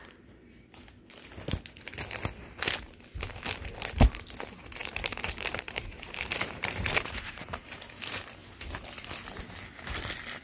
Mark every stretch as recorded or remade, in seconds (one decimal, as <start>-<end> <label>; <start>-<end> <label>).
0.0-4.8 recorded; 4.8-8.0 remade; 8.0-8.4 recorded; 8.4-9.4 remade; 9.4-10.4 recorded